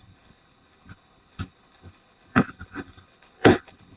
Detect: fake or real fake